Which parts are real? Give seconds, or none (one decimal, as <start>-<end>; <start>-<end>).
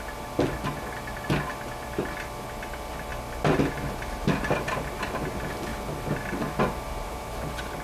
0.0-7.8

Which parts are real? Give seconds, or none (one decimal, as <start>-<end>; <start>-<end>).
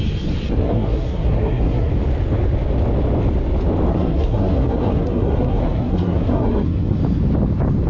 0.0-0.5; 1.9-3.9; 7.0-7.9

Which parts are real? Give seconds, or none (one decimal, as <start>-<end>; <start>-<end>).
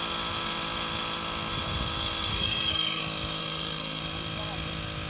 0.0-2.3; 3.0-3.4; 4.0-5.1